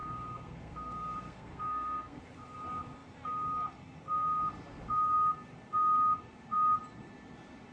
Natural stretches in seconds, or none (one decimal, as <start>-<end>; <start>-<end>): 2.2-7.7